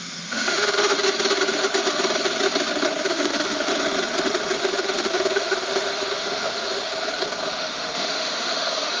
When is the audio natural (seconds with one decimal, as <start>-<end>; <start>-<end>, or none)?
0.9-3.0; 3.7-4.6; 6.9-7.6